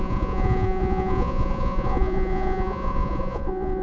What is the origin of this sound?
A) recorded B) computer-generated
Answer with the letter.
B